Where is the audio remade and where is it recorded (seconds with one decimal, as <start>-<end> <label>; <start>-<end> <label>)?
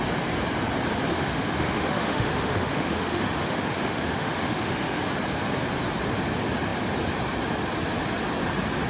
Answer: 0.0-1.1 recorded; 1.1-5.0 remade; 5.0-8.9 recorded